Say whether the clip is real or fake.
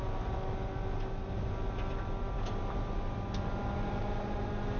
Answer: real